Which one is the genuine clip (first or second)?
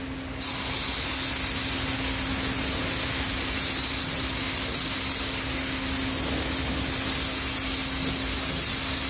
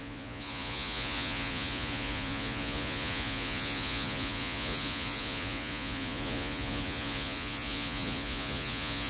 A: first